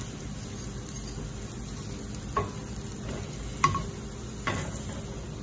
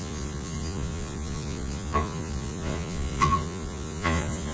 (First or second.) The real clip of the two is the first